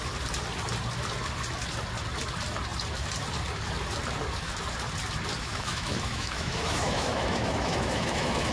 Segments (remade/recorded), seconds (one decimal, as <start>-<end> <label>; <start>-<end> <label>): 0.0-5.4 recorded; 5.4-8.5 remade